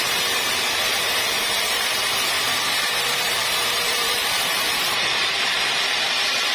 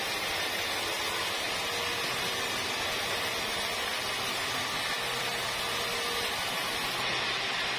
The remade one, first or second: first